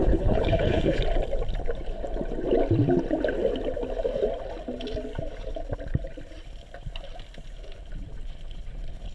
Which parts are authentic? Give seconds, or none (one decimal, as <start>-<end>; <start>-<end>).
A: 1.0-9.1